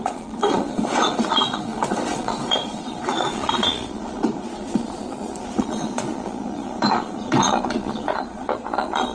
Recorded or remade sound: remade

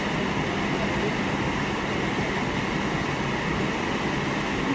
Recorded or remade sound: recorded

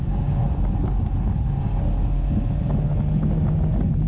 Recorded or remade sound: recorded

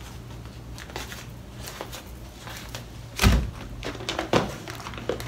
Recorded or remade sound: recorded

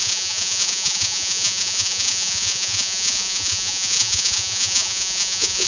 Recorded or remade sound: remade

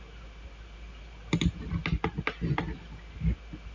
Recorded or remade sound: recorded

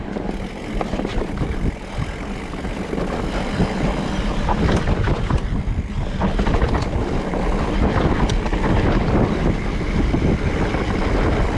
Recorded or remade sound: recorded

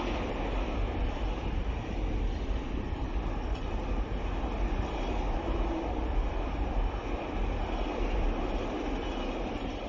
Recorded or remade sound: recorded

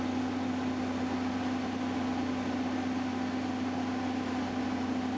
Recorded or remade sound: recorded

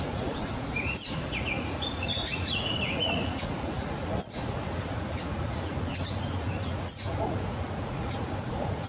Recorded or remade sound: remade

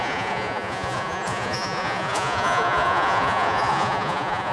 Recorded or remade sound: remade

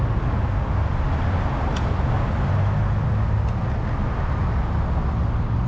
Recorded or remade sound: recorded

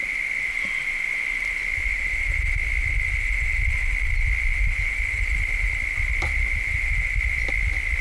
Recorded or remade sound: recorded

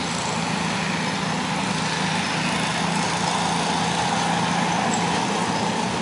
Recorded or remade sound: recorded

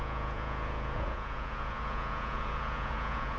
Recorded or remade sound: remade